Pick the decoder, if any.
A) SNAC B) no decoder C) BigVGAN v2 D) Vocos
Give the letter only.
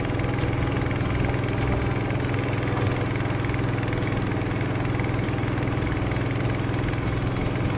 B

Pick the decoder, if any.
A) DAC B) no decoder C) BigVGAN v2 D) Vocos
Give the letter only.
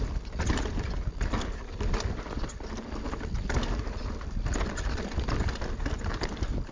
B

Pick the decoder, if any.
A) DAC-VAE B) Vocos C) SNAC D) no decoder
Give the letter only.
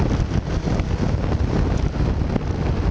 D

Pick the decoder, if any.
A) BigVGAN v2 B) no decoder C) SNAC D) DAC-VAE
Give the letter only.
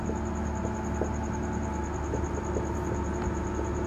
B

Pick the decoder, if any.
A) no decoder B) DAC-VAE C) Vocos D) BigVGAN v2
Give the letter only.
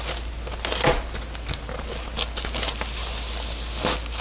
A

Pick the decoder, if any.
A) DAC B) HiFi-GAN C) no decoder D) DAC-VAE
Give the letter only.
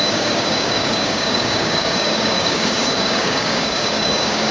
A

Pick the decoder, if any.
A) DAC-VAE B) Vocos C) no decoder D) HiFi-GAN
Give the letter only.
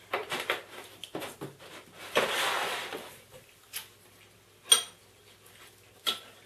C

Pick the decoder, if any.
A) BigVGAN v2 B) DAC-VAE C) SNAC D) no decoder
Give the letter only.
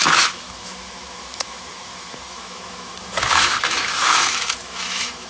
B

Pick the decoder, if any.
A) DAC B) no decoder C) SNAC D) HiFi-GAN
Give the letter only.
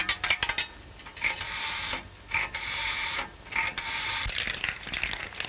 B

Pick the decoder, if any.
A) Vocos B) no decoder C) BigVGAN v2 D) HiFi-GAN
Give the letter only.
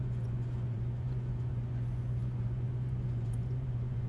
A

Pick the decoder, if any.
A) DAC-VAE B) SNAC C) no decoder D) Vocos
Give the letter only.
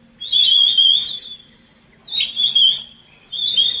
C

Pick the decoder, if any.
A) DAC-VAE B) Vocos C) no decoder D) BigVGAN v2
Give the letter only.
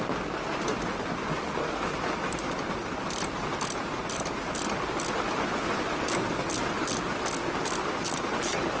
C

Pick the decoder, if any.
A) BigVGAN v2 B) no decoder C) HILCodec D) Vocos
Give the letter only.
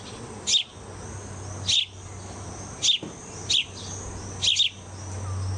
B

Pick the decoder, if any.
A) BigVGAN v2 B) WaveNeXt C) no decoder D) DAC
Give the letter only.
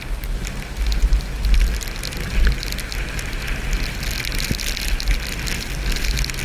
C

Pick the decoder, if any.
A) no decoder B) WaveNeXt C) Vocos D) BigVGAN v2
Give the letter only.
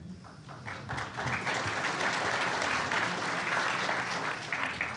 A